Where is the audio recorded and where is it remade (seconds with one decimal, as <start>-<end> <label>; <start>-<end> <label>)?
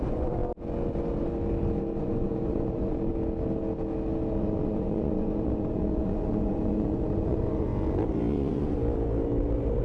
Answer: 0.0-0.4 remade; 0.4-2.0 recorded; 2.0-3.1 remade; 3.1-4.4 recorded; 4.4-7.7 remade; 7.7-8.3 recorded; 8.3-8.8 remade; 8.8-9.8 recorded